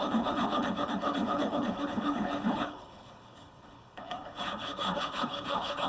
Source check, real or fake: fake